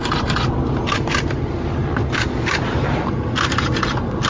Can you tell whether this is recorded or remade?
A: recorded